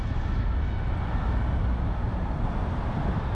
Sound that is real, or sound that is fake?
real